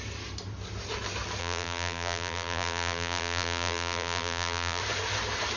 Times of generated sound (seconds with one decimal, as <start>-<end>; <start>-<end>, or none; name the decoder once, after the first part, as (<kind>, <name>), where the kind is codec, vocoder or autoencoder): 1.4-4.8 (vocoder, BigVGAN v2)